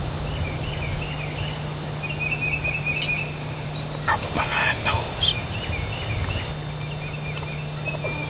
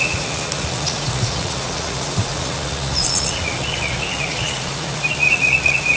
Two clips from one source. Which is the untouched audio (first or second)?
first